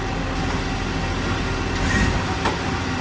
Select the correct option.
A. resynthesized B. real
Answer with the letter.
B